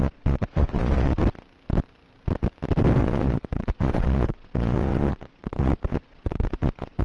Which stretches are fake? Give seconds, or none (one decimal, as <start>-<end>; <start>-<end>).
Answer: 0.0-1.2; 3.0-7.0

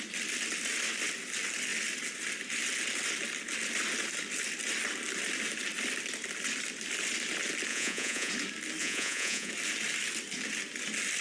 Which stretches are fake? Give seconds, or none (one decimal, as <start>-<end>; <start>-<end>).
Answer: 7.7-8.3; 8.8-9.5

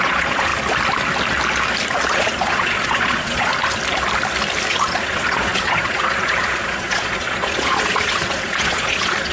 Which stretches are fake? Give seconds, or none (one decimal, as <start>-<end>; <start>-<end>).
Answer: 0.0-0.5; 2.1-3.5; 4.7-9.3

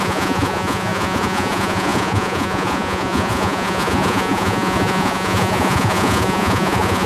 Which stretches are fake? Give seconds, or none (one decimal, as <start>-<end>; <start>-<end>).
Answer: 0.0-7.1

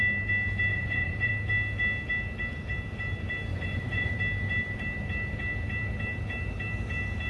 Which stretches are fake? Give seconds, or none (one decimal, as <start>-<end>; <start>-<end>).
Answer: 0.7-1.3; 3.5-4.1

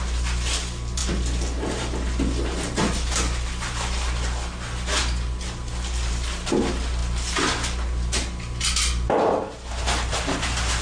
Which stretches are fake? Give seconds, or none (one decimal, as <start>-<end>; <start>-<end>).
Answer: none

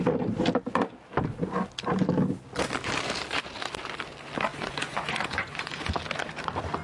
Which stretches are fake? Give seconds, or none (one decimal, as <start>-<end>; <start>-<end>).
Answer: 4.5-5.9

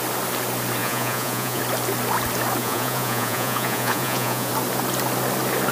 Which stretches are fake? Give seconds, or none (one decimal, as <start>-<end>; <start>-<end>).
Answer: 0.8-1.6; 2.6-4.5